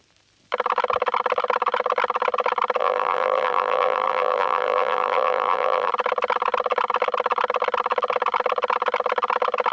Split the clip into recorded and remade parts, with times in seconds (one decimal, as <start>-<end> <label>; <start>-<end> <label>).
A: 0.0-2.8 recorded; 2.8-5.9 remade; 5.9-9.7 recorded